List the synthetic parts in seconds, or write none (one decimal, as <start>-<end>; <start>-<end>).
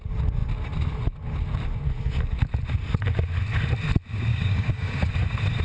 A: 4.3-5.1